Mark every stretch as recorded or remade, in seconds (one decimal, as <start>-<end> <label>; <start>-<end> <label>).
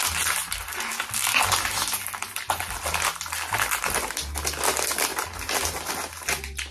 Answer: 0.0-6.7 recorded